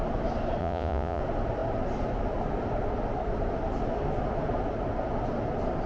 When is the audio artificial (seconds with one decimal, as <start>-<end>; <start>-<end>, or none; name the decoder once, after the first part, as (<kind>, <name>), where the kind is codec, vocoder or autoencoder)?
0.6-1.2 (vocoder, Vocos)

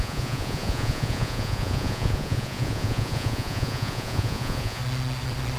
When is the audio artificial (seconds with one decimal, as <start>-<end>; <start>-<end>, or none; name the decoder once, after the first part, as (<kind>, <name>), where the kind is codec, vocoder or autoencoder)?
0.0-4.8 (vocoder, Vocos)

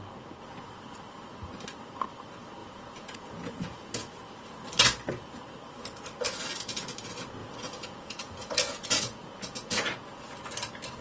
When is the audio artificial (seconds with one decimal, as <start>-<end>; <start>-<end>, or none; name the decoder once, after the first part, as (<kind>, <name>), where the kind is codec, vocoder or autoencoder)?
2.6-4.2 (vocoder, Vocos); 7.4-10.4